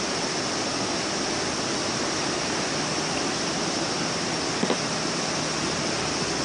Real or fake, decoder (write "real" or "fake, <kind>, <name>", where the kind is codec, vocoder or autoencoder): real